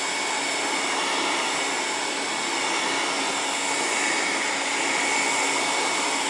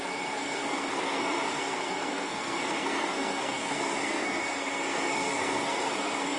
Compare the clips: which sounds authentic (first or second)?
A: first